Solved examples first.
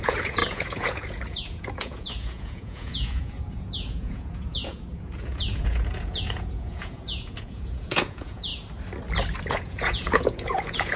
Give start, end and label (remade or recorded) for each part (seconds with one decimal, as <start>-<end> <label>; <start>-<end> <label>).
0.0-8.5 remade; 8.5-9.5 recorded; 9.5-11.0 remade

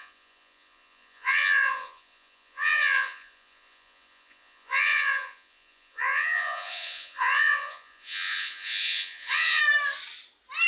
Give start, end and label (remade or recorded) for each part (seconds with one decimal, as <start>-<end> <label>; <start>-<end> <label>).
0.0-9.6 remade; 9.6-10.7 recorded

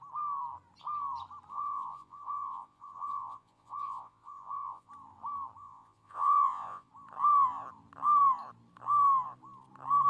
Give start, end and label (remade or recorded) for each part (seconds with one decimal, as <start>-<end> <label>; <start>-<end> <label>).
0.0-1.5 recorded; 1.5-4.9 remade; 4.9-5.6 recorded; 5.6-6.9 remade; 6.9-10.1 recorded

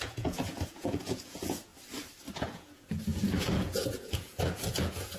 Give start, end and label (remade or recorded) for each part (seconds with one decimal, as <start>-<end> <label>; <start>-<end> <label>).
0.0-1.7 remade; 1.7-2.3 recorded; 2.3-5.2 remade

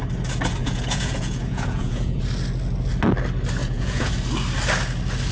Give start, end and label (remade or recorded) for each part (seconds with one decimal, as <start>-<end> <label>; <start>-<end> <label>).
0.0-0.6 recorded; 0.6-2.2 remade; 2.2-3.6 recorded; 3.6-4.1 remade; 4.1-5.3 recorded

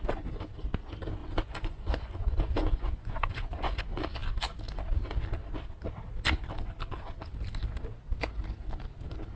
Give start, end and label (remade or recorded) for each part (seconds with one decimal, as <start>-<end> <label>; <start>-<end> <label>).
0.0-1.2 recorded; 1.2-3.8 remade; 3.8-9.4 recorded

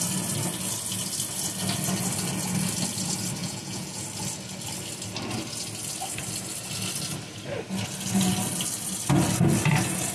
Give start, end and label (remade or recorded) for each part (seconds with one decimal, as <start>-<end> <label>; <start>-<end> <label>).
0.0-3.4 recorded; 3.4-4.0 remade; 4.0-10.1 recorded

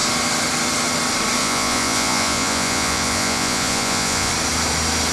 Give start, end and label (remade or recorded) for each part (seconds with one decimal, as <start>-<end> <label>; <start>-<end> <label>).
0.0-1.4 recorded; 1.4-4.3 remade; 4.3-5.1 recorded